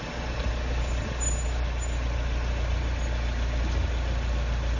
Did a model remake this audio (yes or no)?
no